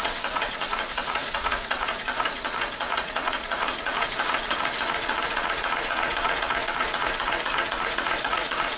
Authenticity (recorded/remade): remade